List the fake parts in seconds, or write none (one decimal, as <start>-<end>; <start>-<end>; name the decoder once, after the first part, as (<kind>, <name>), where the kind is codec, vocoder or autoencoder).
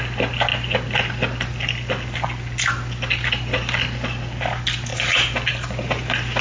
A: none